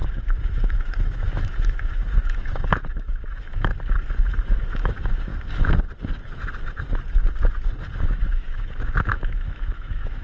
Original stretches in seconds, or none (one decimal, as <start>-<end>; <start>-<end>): 3.7-4.2; 5.3-8.0